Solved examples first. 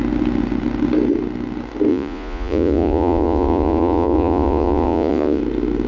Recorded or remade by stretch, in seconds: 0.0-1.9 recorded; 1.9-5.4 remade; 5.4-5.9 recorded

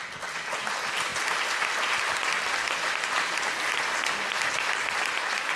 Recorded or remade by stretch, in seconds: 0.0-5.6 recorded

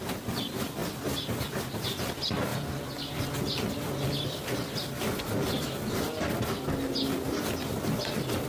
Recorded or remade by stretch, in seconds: 0.0-8.5 recorded

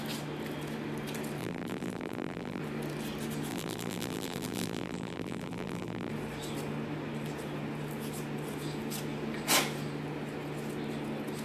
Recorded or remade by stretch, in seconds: 0.0-1.4 recorded; 1.4-2.6 remade; 2.6-3.5 recorded; 3.5-6.1 remade; 6.1-11.4 recorded

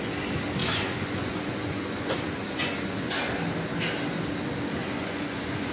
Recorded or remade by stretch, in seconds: 0.0-0.6 recorded; 0.6-3.2 remade; 3.2-4.8 recorded; 4.8-5.7 remade

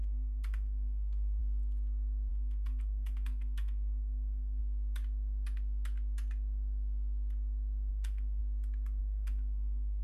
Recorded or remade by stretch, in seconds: 0.0-1.4 remade; 1.4-2.3 recorded; 2.3-4.6 remade; 4.6-7.9 recorded; 7.9-8.4 remade; 8.4-9.0 recorded; 9.0-10.0 remade

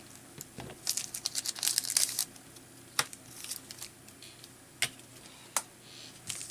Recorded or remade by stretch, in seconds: 0.0-6.5 recorded

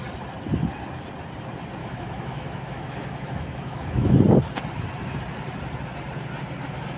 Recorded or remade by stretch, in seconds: 0.0-1.8 recorded; 1.8-4.1 remade; 4.1-7.0 recorded